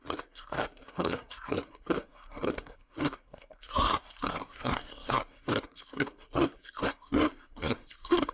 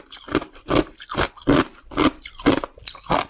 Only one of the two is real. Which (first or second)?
second